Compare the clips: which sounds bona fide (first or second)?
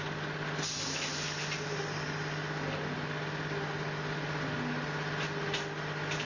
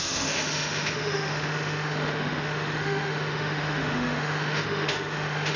first